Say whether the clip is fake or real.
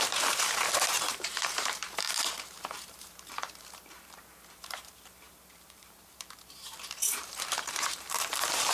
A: fake